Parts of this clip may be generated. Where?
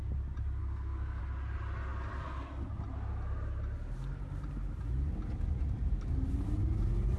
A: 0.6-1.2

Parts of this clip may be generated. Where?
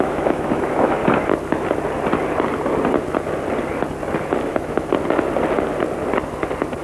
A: 0.0-1.0; 4.5-4.9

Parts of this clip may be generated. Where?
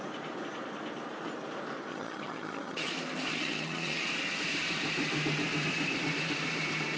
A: 1.9-2.9; 3.3-4.1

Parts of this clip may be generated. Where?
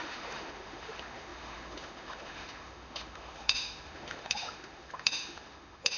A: 0.0-6.0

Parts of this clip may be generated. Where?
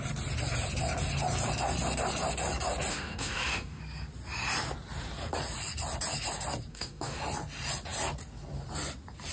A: 2.9-3.8; 6.7-7.2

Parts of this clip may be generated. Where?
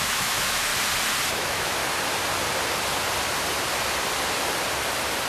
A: 0.0-0.7; 1.3-1.8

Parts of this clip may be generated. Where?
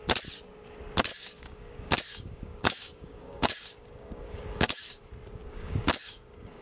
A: 1.1-5.0; 5.4-6.6